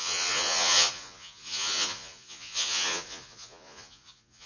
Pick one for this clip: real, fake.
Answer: fake